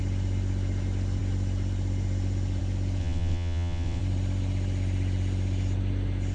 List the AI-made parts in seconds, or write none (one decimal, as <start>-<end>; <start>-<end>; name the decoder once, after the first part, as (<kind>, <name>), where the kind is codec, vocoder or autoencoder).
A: 3.0-4.0 (vocoder, WaveNeXt)